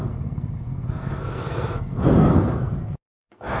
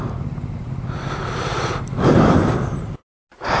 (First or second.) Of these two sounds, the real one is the second